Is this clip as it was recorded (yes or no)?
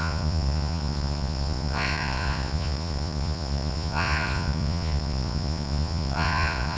no